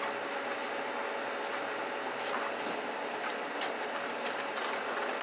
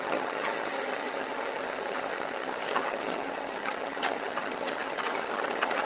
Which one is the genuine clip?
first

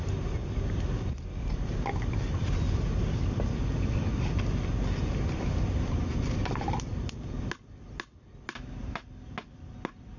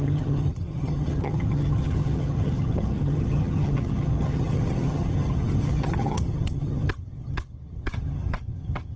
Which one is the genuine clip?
first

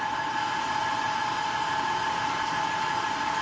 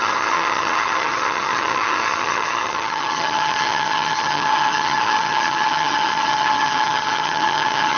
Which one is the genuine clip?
first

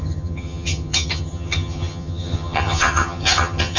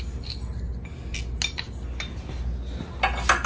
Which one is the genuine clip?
second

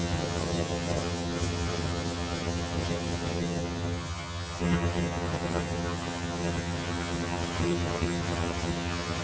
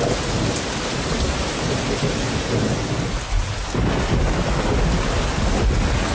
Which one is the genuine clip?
second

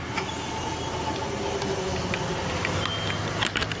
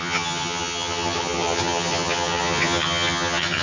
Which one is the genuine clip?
first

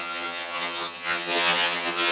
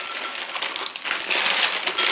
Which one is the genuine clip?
second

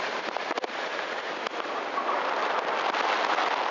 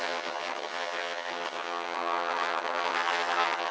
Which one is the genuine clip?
first